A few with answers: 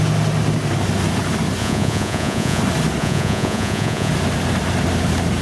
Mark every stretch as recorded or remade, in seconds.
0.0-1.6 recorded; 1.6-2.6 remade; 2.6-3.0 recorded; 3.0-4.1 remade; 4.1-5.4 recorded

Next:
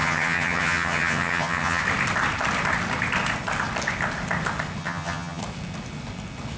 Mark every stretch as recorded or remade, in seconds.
0.0-1.8 remade; 1.8-4.8 recorded; 4.8-5.4 remade; 5.4-6.6 recorded

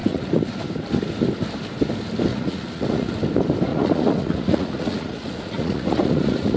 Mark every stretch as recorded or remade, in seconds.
0.0-0.6 remade; 0.6-2.3 recorded; 2.3-3.1 remade; 3.1-3.7 recorded; 3.7-6.6 remade

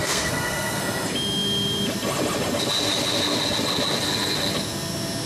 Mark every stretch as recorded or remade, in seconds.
0.0-0.8 remade; 0.8-5.3 recorded

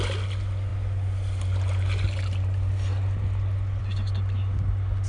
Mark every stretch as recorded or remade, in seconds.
0.0-5.1 recorded

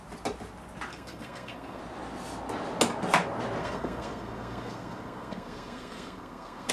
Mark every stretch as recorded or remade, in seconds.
0.0-0.9 recorded; 0.9-1.8 remade; 1.8-3.6 recorded; 3.6-6.7 remade

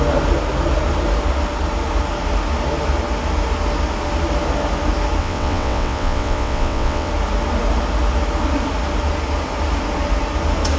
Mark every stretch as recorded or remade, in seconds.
0.0-5.2 recorded; 5.2-7.1 remade; 7.1-10.8 recorded